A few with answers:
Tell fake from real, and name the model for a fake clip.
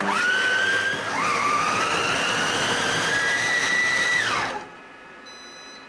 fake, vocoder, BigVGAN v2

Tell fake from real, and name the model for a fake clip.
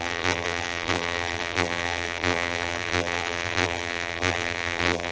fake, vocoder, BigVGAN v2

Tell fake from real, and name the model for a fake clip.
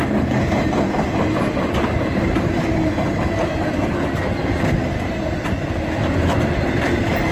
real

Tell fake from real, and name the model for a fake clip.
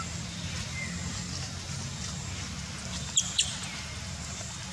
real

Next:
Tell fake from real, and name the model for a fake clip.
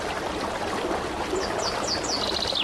real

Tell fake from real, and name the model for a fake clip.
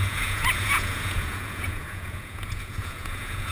fake, vocoder, Vocos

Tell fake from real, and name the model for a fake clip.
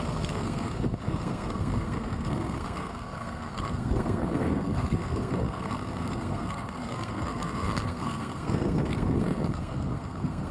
fake, codec, SNAC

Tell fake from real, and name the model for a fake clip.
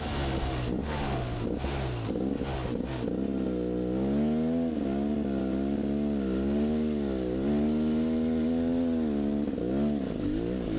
real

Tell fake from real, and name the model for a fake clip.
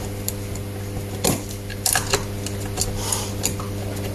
real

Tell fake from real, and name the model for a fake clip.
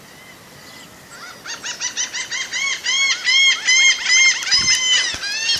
real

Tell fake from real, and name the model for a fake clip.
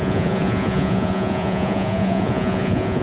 fake, vocoder, Vocos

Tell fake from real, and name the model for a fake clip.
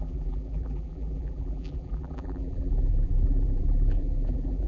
fake, vocoder, BigVGAN v2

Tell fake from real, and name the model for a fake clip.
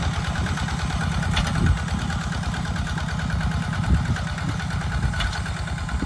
real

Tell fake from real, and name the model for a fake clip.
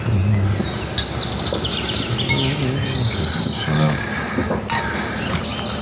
real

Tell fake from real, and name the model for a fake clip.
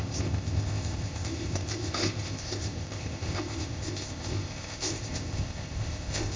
fake, codec, ZipCodec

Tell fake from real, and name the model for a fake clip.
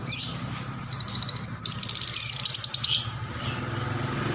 real